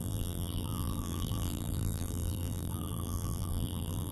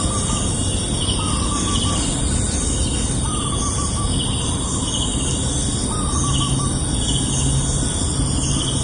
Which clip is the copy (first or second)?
first